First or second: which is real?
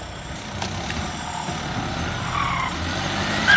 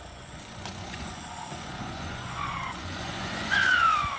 first